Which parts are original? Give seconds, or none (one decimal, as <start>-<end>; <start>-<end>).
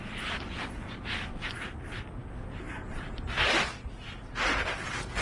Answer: 0.0-5.2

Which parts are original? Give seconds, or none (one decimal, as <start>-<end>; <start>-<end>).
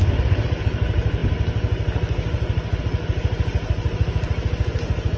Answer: 0.0-5.2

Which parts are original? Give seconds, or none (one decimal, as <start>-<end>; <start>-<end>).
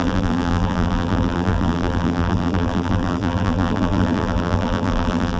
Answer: none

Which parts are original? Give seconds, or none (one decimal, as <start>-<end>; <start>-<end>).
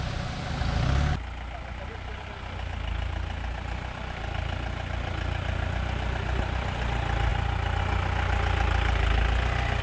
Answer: 0.0-7.3; 7.8-9.8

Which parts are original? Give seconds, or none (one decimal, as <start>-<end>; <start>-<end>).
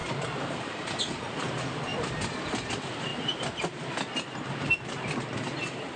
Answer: 1.9-2.7; 3.1-6.0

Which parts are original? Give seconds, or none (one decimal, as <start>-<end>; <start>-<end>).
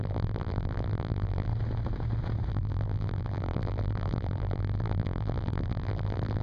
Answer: 1.5-2.5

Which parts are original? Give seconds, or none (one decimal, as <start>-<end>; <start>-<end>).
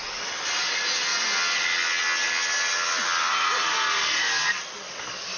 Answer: 0.0-5.4